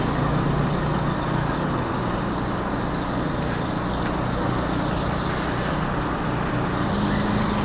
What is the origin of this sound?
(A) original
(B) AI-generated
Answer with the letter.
A